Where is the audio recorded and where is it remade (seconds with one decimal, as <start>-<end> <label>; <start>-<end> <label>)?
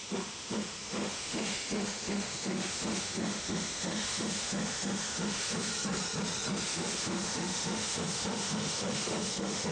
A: 0.0-5.7 remade; 5.7-6.7 recorded; 6.7-9.7 remade